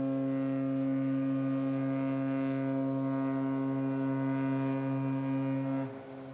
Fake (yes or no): no